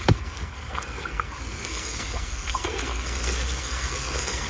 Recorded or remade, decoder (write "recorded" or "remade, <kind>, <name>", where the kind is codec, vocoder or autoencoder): remade, codec, SNAC